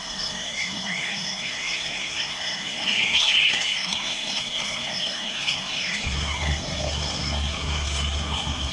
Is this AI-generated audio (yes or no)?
yes